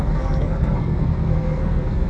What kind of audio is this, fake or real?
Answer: fake